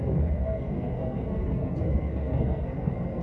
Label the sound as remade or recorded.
remade